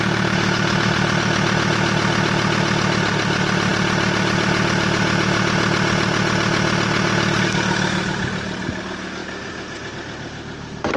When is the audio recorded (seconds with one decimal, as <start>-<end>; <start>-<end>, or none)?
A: 0.0-11.0